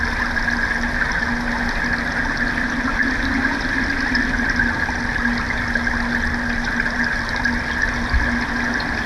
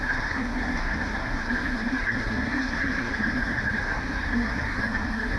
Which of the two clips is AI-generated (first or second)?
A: second